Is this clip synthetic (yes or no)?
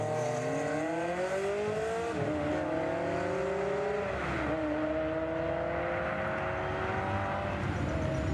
no